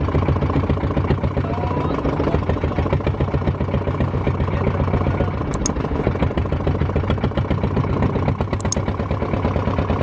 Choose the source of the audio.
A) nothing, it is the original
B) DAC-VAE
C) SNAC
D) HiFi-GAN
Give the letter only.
A